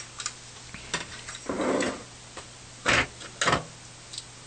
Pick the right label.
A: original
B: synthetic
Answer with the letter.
A